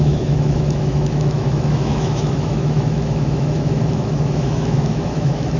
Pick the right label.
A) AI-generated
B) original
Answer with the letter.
A